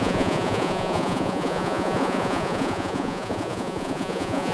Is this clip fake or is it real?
fake